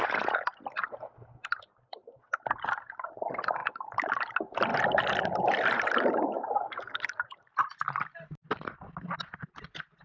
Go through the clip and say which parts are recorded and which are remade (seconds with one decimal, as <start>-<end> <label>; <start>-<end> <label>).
0.0-3.6 recorded; 3.6-4.3 remade; 4.3-4.7 recorded; 4.7-6.1 remade; 6.1-7.6 recorded; 7.6-8.3 remade; 8.3-10.0 recorded